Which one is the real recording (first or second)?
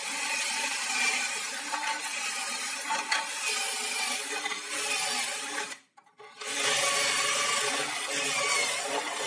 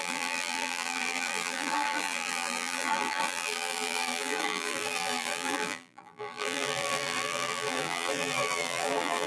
first